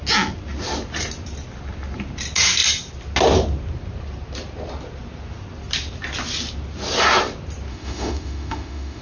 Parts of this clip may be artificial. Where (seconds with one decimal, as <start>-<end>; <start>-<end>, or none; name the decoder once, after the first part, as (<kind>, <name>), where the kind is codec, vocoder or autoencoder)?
7.7-9.0 (autoencoder, DAC-VAE)